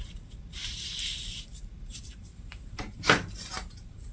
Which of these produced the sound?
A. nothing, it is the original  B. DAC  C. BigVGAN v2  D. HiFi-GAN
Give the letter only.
C